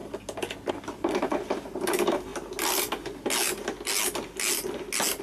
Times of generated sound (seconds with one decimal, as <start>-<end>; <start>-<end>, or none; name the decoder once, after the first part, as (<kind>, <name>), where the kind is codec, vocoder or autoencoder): 0.7-2.3 (vocoder, BigVGAN v2)